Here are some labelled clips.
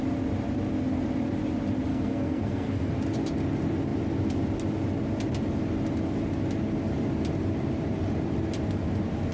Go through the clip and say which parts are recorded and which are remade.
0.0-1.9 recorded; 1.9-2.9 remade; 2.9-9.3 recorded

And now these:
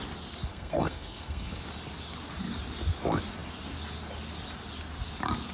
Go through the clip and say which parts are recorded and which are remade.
0.0-0.5 recorded; 0.5-1.6 remade; 1.6-5.5 recorded

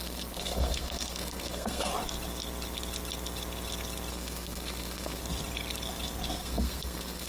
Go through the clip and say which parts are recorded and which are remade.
0.0-1.9 remade; 1.9-4.1 recorded; 4.1-5.2 remade; 5.2-6.3 recorded; 6.3-7.3 remade

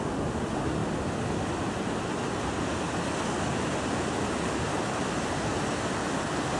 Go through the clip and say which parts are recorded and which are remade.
0.0-6.6 recorded

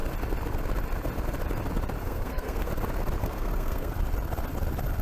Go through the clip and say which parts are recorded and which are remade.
0.0-2.0 recorded; 2.0-2.7 remade; 2.7-3.2 recorded; 3.2-3.9 remade; 3.9-5.0 recorded

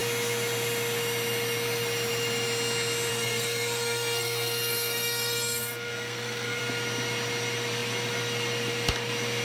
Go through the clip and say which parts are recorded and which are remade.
0.0-3.1 recorded; 3.1-6.6 remade; 6.6-9.4 recorded

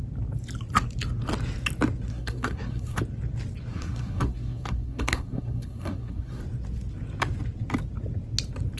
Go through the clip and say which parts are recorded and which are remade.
0.0-2.1 recorded; 2.1-3.0 remade; 3.0-3.7 recorded; 3.7-6.4 remade; 6.4-8.8 recorded

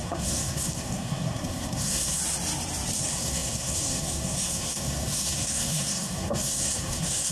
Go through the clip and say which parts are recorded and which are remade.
0.0-2.2 remade; 2.2-3.0 recorded; 3.0-7.3 remade